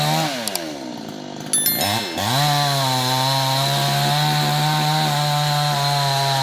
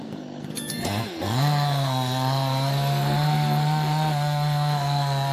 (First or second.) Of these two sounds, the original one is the first